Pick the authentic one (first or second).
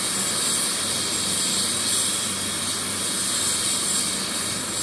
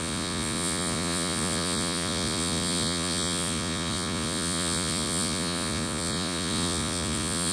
first